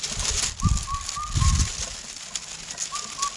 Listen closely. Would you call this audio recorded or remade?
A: recorded